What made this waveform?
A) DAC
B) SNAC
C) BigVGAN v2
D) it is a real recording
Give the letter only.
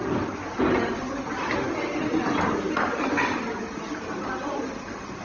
C